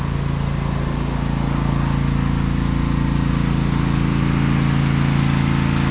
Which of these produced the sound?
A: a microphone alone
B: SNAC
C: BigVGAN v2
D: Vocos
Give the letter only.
A